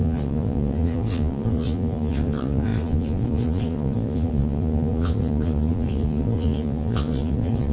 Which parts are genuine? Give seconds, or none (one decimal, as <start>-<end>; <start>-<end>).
none